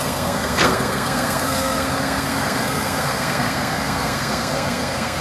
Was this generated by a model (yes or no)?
yes